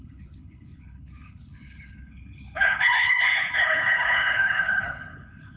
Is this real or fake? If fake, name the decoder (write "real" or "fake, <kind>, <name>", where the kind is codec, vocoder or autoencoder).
fake, codec, HILCodec